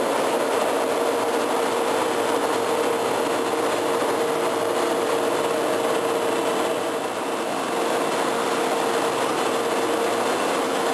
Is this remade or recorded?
recorded